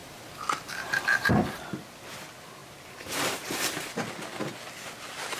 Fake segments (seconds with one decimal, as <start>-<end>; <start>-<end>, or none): 0.0-1.3; 2.6-3.9